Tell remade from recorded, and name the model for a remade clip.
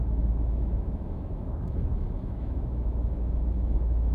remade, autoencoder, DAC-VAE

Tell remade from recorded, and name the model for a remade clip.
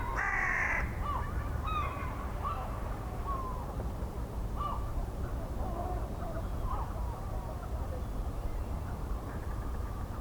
remade, vocoder, BigVGAN v2